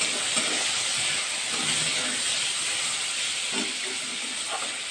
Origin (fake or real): real